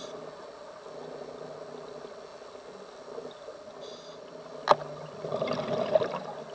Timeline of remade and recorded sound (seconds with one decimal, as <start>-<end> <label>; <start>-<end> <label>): 0.0-6.5 recorded